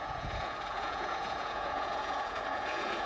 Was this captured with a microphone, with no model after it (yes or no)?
no